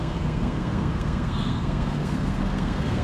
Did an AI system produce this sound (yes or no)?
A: yes